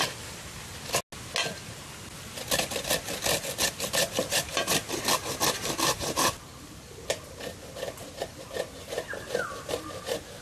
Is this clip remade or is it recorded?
recorded